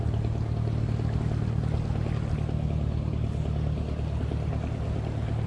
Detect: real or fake real